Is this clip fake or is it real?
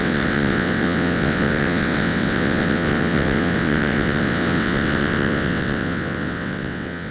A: fake